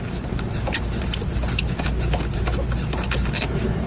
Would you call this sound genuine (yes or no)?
yes